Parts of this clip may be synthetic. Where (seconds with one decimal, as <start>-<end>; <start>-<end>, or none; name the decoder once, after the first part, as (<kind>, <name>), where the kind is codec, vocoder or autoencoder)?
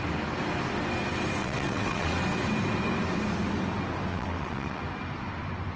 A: 1.4-2.2 (vocoder, WaveNeXt); 4.1-4.8